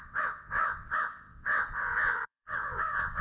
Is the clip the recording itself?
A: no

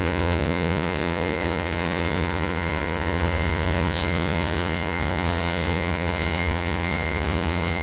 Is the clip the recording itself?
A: no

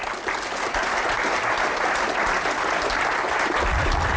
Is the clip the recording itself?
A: yes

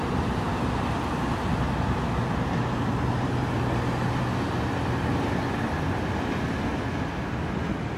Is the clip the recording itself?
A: yes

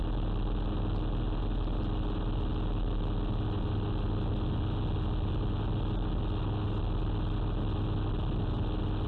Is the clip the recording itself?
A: yes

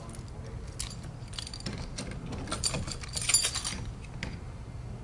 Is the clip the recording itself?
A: yes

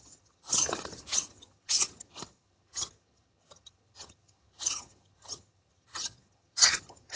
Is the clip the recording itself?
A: no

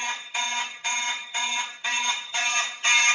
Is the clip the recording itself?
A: no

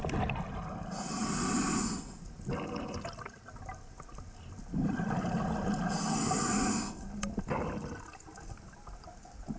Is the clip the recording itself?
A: yes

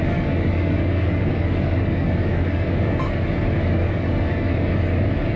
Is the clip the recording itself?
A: no